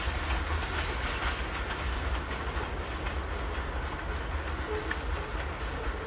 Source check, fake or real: real